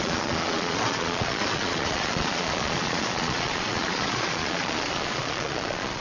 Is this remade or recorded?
remade